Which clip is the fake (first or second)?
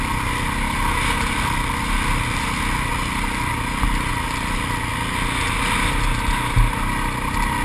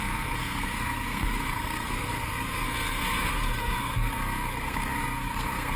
second